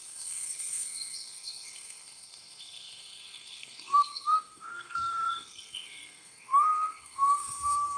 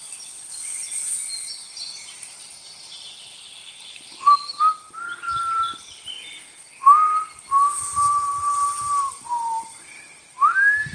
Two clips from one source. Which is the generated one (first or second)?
first